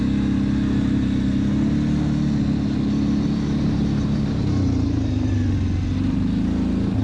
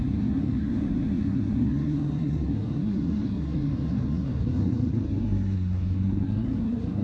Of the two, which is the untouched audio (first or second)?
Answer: first